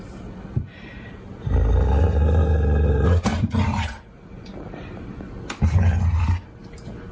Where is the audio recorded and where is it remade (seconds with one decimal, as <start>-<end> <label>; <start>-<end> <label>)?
0.0-3.3 recorded; 3.3-4.2 remade; 4.2-7.1 recorded